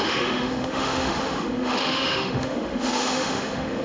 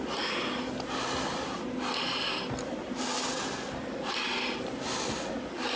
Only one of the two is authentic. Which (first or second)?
second